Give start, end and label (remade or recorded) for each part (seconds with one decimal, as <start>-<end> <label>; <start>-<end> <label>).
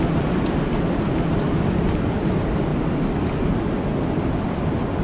0.0-5.0 recorded